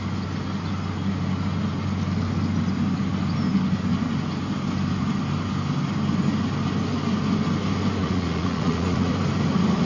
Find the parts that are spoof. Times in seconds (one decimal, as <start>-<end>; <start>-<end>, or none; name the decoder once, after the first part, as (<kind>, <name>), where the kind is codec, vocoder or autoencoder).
8.0-9.1 (vocoder, Vocos)